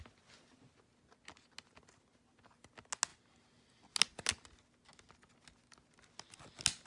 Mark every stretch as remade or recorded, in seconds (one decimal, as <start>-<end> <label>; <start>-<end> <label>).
0.0-6.9 recorded